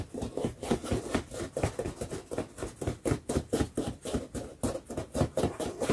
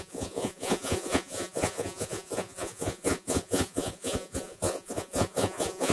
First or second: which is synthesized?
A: second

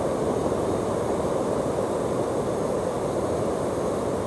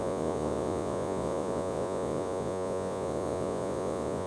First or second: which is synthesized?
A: second